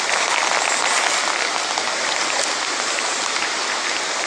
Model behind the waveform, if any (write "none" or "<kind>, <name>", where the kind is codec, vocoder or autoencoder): none